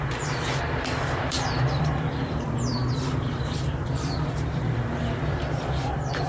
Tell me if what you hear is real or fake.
fake